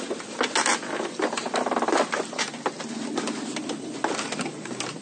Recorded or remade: recorded